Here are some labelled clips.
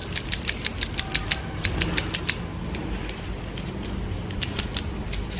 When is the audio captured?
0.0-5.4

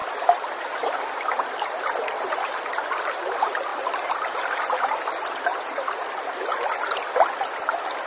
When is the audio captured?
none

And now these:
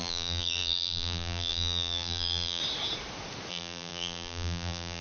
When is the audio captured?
2.6-3.5

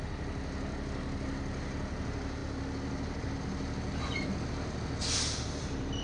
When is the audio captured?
0.0-6.0

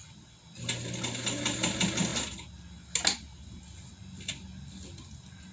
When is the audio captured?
0.0-5.5

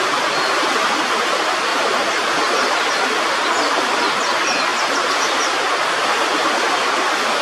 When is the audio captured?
0.0-1.7; 3.0-7.4